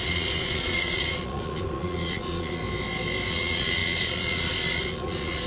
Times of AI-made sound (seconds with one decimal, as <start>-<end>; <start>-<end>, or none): 0.0-2.6; 3.3-5.5